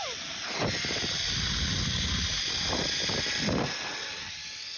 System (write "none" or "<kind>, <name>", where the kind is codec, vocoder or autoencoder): none